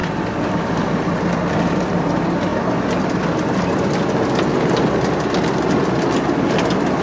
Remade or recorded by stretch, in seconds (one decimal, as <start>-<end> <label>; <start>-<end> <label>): 0.0-2.5 remade; 2.5-7.0 recorded